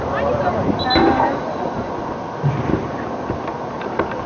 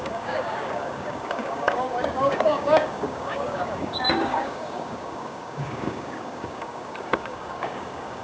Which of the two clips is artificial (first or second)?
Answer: second